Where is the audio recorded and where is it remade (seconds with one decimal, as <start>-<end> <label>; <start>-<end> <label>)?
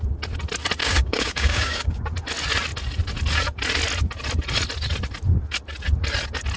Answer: 0.0-0.8 recorded; 0.8-2.0 remade; 2.0-6.6 recorded